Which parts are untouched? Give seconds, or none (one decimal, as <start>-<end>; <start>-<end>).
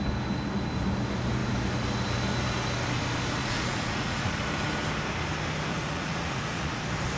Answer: 0.0-3.4; 4.3-5.7; 6.8-7.2